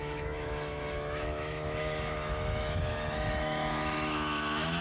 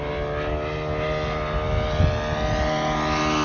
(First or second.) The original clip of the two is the second